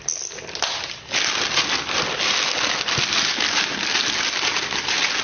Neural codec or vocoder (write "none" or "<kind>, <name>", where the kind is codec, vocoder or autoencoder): none